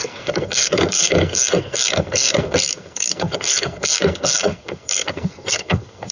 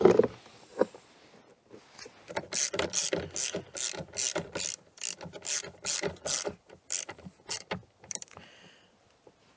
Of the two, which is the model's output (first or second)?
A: first